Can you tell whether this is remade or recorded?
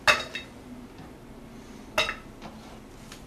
recorded